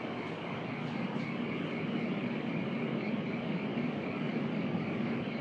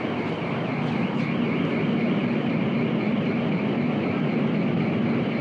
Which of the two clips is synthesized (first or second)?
first